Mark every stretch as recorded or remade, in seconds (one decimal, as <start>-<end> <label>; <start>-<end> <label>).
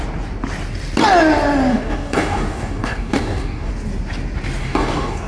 0.0-1.7 recorded; 1.7-3.7 remade; 3.7-4.6 recorded; 4.6-5.3 remade